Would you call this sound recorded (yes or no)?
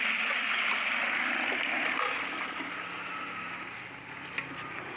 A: yes